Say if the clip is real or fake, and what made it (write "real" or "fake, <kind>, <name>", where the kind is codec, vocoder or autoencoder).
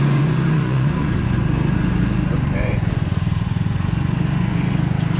fake, vocoder, Vocos